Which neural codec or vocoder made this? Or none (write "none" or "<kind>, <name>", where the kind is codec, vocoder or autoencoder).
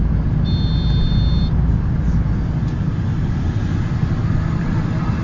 none